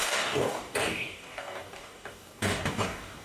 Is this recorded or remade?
remade